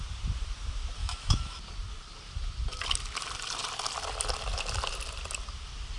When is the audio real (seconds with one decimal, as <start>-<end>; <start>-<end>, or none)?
0.0-1.0; 1.6-6.0